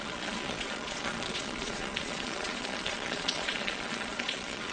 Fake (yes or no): yes